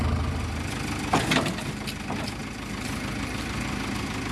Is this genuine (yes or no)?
yes